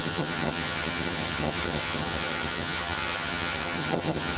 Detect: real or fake fake